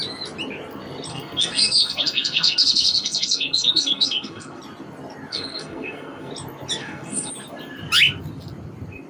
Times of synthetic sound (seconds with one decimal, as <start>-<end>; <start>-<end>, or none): 1.1-4.6; 5.3-6.3; 6.8-7.3